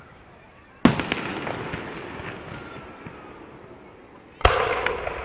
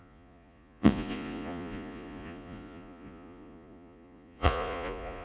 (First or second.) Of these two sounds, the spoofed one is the second